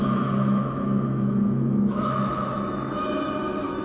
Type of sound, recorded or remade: remade